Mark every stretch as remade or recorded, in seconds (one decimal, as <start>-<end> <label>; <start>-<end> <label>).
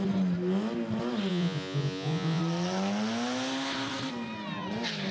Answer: 0.0-1.3 recorded; 1.3-2.4 remade; 2.4-5.1 recorded